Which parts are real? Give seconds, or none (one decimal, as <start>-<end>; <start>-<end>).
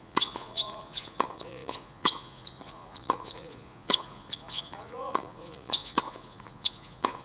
none